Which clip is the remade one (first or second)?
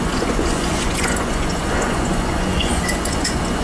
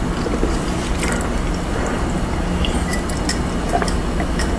first